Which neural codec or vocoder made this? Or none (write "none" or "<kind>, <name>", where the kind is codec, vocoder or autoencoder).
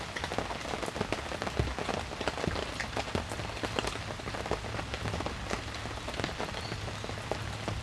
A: none